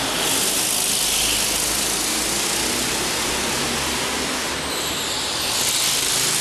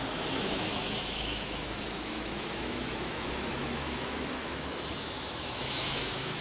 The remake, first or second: second